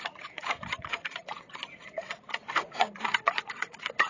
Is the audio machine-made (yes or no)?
yes